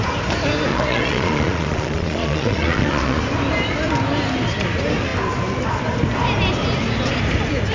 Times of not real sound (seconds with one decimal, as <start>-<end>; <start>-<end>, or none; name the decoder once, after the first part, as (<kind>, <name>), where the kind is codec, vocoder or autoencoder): 0.7-3.2 (vocoder, Vocos)

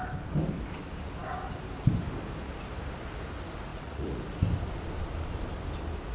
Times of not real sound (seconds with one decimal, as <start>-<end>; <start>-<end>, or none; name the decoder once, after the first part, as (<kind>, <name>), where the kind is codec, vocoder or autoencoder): 3.7-4.2 (vocoder, Vocos)

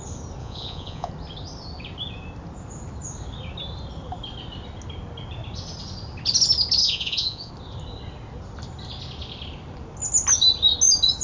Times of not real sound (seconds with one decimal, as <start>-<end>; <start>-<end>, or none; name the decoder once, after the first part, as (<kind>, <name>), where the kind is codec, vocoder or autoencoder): 0.4-1.1 (vocoder, Vocos); 6.8-7.5

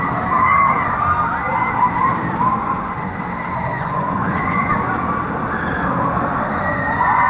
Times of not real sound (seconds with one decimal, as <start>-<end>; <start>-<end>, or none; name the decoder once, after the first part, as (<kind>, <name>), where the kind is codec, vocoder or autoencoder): 2.6-3.2 (vocoder, Vocos); 3.7-4.7; 6.5-7.3

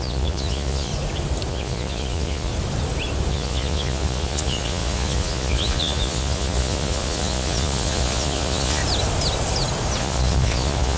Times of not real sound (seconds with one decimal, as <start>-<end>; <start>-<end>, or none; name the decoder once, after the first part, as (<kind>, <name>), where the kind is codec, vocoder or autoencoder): 0.0-0.9 (vocoder, Vocos); 1.5-2.5; 3.3-8.8; 10.0-11.0

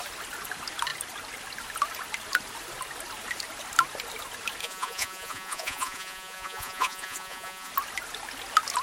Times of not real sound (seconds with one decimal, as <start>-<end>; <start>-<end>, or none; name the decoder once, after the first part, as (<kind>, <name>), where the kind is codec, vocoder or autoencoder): 4.6-7.7 (vocoder, Vocos)

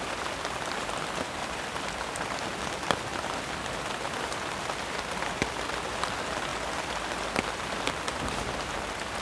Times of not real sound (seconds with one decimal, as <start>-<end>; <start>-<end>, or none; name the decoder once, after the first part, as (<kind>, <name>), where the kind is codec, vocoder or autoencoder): none

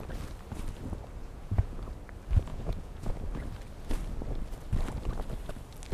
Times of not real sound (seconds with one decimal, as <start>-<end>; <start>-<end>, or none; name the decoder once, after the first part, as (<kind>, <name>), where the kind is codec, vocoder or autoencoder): 1.2-1.8 (vocoder, Vocos); 2.5-3.1